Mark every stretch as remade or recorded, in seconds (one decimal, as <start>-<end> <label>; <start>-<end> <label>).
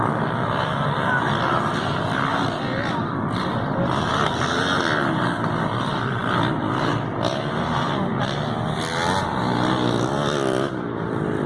0.0-11.5 recorded